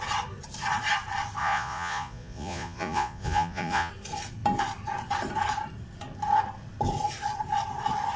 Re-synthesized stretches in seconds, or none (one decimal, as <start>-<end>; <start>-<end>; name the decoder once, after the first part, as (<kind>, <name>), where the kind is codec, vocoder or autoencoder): 1.4-3.9 (vocoder, Vocos)